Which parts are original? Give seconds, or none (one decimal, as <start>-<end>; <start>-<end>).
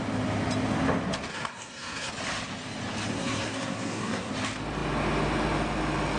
0.0-1.3; 2.1-3.1; 4.3-6.2